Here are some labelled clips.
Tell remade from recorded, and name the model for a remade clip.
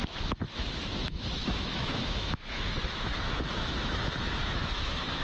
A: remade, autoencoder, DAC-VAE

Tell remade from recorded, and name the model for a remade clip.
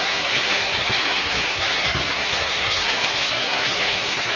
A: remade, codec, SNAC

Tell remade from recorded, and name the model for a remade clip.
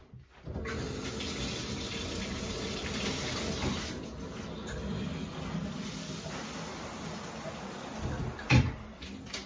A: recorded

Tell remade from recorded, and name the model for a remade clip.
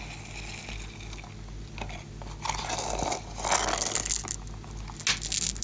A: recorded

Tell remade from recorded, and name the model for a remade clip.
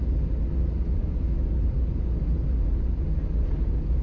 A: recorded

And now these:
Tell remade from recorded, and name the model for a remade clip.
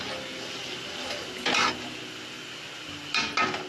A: recorded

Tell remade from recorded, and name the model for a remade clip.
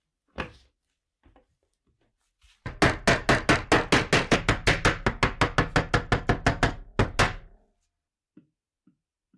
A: recorded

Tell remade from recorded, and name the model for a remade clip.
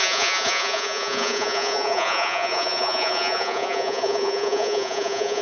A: remade, vocoder, Vocos